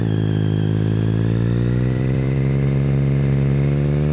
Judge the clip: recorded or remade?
remade